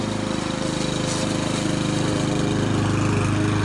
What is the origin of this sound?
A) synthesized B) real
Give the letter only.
B